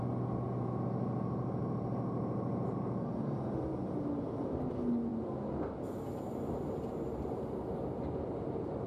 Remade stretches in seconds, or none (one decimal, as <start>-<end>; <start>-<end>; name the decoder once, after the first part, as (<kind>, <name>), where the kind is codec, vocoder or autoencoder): none